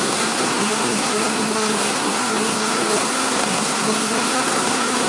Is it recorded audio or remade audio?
remade